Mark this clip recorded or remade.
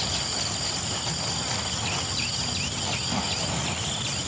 recorded